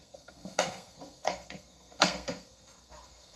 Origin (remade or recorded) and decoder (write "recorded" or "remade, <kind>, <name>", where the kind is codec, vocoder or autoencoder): remade, codec, SNAC